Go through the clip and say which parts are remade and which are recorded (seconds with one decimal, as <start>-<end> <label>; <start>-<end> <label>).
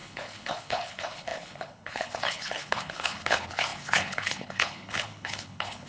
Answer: 0.0-5.9 remade